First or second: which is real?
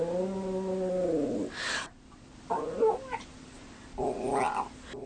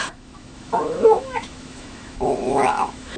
first